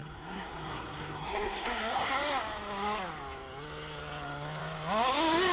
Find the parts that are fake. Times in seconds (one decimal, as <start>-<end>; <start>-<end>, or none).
0.0-2.1

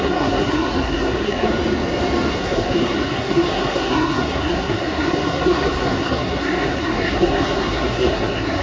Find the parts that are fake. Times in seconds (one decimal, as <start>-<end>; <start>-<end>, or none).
0.0-1.5; 2.3-8.6

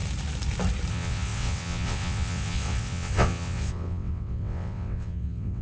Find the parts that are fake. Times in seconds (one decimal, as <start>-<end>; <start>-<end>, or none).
0.9-5.6

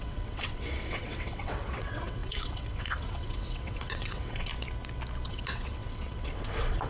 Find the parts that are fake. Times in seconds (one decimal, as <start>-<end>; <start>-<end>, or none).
0.0-4.5; 5.3-6.9